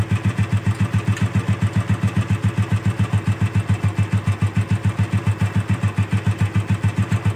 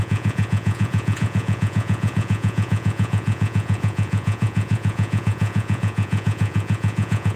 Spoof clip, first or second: second